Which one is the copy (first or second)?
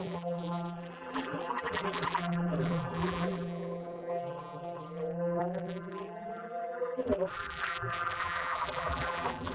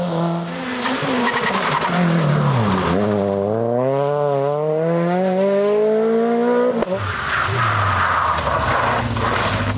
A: first